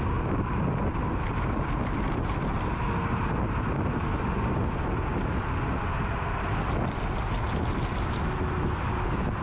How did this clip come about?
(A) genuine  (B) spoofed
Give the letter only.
A